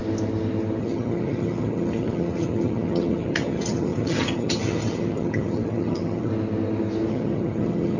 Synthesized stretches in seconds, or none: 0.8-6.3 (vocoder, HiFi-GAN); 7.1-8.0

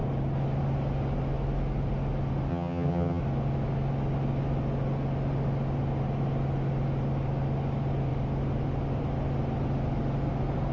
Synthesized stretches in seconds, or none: 2.5-3.2 (vocoder, HiFi-GAN)

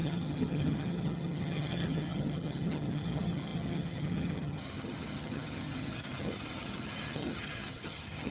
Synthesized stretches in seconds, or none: 0.0-8.3 (vocoder, HiFi-GAN)